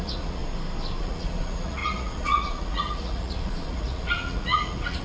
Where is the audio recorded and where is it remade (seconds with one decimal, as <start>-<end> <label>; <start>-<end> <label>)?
0.0-0.4 remade; 0.4-1.0 recorded; 1.0-5.0 remade